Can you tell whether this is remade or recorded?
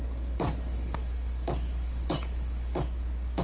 remade